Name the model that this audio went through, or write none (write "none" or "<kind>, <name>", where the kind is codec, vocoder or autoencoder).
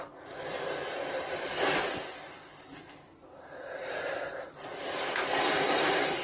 vocoder, BigVGAN v2